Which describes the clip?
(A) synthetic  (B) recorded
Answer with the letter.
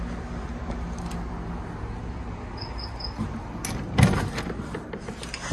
B